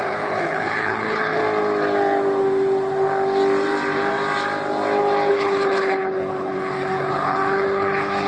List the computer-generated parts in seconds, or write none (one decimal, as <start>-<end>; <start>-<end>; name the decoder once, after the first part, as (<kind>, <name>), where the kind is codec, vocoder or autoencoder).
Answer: 0.0-1.4 (codec, HILCodec); 5.3-8.3